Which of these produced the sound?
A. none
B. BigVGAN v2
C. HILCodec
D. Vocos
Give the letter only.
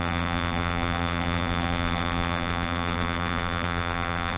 B